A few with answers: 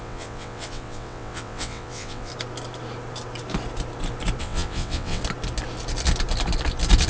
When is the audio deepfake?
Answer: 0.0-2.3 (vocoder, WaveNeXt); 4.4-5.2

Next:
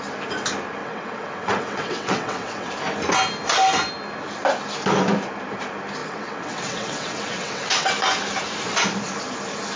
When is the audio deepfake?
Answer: 0.8-2.7 (vocoder, WaveNeXt); 6.0-7.9

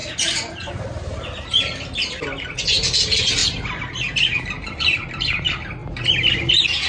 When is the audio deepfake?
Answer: none

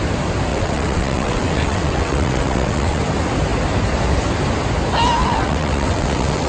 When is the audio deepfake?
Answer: 0.5-3.0 (vocoder, WaveNeXt); 5.2-6.5

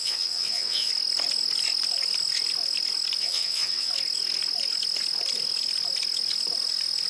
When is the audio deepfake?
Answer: 0.0-0.9 (vocoder, WaveNeXt); 3.2-3.9

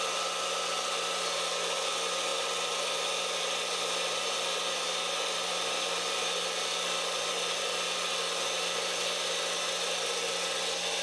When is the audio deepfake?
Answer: none